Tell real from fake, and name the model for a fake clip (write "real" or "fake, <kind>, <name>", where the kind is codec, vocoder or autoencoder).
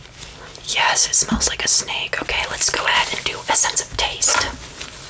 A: real